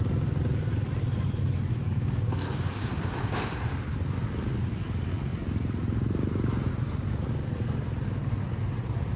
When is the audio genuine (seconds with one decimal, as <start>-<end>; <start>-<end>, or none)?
0.0-1.7; 3.6-9.2